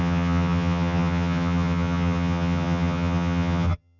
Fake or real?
fake